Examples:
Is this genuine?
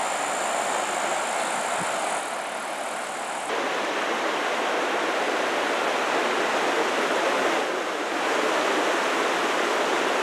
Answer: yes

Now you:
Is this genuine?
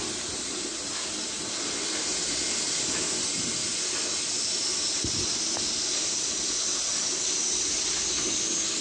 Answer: yes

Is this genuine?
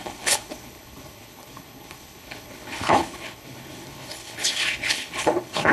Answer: no